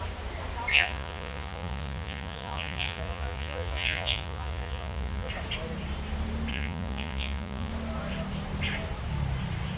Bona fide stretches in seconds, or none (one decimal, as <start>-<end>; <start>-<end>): 0.0-0.7; 5.3-6.5; 7.7-9.8